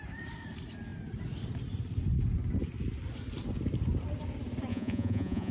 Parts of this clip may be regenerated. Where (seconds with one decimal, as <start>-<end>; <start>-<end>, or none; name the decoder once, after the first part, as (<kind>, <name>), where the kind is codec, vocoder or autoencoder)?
4.7-5.5 (vocoder, Vocos)